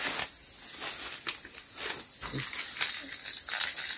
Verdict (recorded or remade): recorded